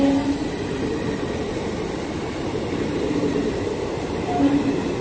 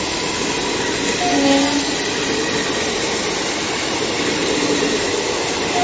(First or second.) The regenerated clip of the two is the first